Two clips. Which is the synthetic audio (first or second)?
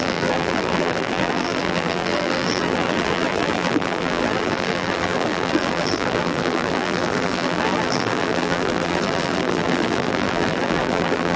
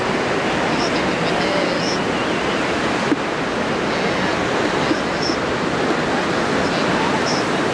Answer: first